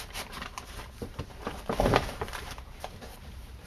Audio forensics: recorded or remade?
remade